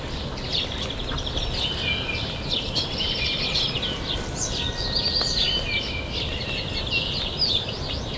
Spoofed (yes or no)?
no